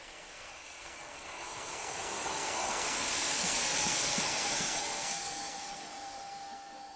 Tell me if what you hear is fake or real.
fake